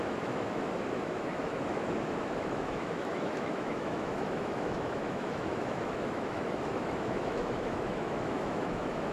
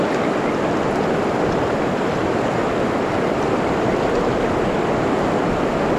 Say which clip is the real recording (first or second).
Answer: second